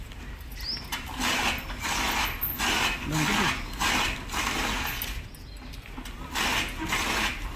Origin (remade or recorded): recorded